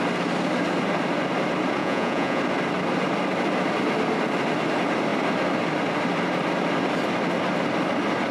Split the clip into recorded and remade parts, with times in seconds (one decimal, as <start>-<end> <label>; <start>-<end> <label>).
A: 0.0-1.8 recorded; 1.8-2.4 remade; 2.4-8.3 recorded